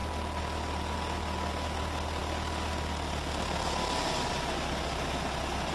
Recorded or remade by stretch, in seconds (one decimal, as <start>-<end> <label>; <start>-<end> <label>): 0.0-5.7 recorded

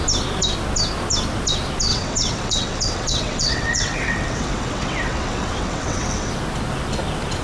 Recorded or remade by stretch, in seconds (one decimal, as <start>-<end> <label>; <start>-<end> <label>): 0.0-1.9 recorded; 1.9-6.3 remade; 6.3-7.4 recorded

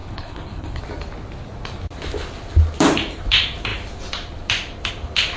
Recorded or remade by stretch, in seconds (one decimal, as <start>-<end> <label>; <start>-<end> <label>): 0.0-0.8 remade; 0.8-5.4 recorded

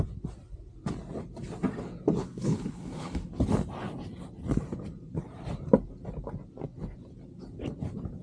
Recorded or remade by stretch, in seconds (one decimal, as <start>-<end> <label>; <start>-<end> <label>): 0.0-2.2 recorded; 2.2-3.3 remade; 3.3-8.2 recorded

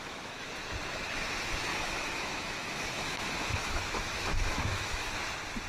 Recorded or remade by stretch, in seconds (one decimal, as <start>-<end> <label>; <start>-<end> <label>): 0.0-0.5 remade; 0.5-1.7 recorded; 1.7-5.1 remade; 5.1-5.7 recorded

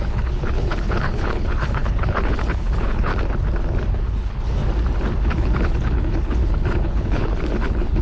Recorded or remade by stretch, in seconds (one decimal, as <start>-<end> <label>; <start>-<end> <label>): 0.0-3.1 remade; 3.1-3.9 recorded; 3.9-4.6 remade; 4.6-5.2 recorded; 5.2-8.0 remade

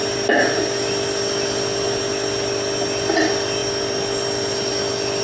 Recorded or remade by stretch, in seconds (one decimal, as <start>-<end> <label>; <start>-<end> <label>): 0.0-5.2 recorded

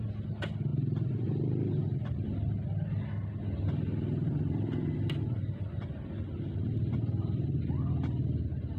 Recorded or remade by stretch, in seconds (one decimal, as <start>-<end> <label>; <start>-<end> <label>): 0.0-8.8 recorded